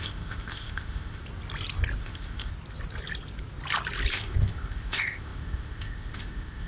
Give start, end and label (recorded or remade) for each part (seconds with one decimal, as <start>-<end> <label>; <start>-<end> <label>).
0.0-1.2 remade; 1.2-2.0 recorded; 2.0-2.5 remade; 2.5-4.1 recorded; 4.1-6.7 remade